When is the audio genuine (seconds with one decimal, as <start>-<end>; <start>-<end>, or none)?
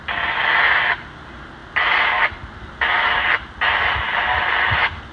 0.0-5.1